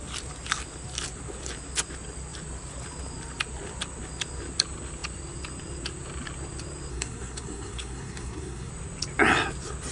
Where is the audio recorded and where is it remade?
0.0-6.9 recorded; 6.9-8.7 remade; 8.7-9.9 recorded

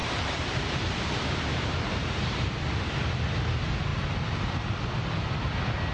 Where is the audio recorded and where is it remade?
0.0-2.6 remade; 2.6-5.9 recorded

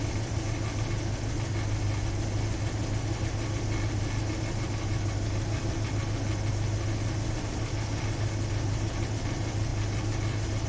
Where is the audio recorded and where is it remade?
0.0-10.7 recorded

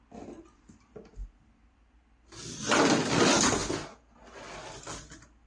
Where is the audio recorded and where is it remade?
0.0-5.5 recorded